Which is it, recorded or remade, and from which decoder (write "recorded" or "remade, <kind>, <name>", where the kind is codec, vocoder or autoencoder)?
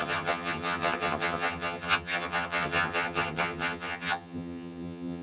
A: remade, vocoder, HiFi-GAN